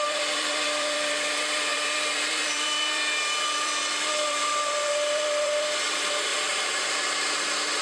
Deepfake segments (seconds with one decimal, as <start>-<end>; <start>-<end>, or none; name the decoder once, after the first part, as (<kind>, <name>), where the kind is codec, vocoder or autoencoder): 0.0-6.3 (vocoder, BigVGAN v2)